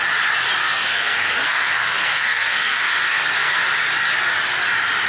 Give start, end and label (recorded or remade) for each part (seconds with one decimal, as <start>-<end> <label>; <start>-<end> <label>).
0.0-0.6 recorded; 0.6-3.7 remade; 3.7-5.1 recorded